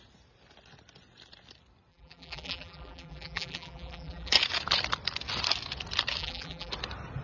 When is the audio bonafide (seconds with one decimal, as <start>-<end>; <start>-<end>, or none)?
0.0-1.9; 4.3-6.2; 6.7-7.2